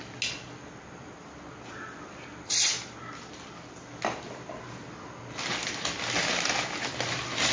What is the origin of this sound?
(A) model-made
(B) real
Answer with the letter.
B